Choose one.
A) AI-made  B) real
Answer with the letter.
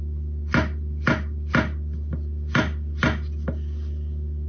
B